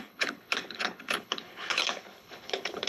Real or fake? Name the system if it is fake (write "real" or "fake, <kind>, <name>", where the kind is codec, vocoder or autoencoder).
fake, codec, HILCodec